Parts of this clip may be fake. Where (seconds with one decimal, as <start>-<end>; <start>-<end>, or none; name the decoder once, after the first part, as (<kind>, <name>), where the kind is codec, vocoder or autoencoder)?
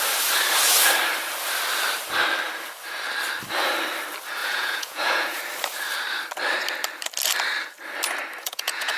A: 4.4-5.4 (vocoder, Vocos); 8.4-9.0